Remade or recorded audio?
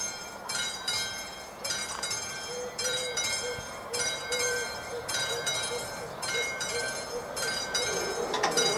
remade